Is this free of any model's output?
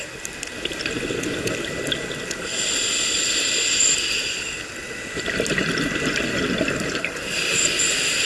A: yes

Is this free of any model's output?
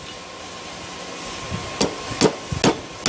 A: yes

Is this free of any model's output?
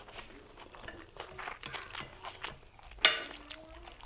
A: yes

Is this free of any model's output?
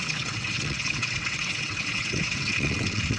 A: no